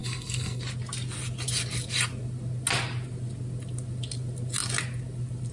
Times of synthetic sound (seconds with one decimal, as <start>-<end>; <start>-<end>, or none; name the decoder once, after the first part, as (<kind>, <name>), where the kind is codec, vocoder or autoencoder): 0.0-0.6 (codec, SNAC)

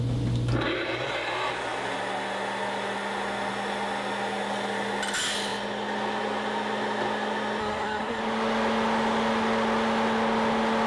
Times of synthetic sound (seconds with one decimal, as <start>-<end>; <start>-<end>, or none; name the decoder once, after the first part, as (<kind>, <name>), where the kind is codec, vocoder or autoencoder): 7.6-8.2 (codec, SNAC)

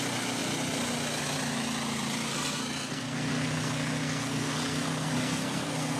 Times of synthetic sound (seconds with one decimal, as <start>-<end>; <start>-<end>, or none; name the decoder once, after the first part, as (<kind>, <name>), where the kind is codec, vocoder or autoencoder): 2.3-6.0 (codec, SNAC)

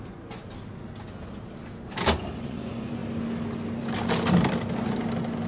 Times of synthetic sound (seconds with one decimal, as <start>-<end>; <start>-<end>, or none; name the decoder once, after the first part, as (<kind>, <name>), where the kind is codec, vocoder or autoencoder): 0.0-0.4 (vocoder, Vocos); 2.3-3.0

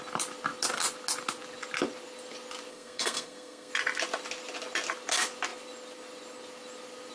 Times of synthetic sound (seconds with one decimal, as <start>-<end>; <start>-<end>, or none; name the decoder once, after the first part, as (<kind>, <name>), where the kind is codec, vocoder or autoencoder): 2.7-3.7 (codec, SNAC)

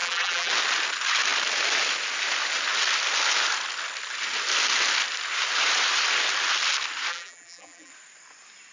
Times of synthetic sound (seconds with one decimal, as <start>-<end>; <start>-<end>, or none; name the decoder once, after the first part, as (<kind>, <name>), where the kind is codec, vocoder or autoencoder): 0.0-0.5 (vocoder, BigVGAN v2); 7.1-7.9

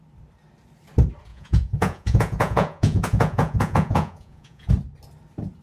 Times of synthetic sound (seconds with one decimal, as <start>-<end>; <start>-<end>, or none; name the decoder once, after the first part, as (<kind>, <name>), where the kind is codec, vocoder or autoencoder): 1.3-4.7 (vocoder, Vocos)

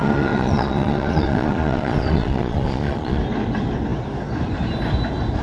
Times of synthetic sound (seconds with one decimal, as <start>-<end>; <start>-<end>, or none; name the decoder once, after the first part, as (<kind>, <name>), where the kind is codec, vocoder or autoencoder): 0.0-3.2 (vocoder, Vocos)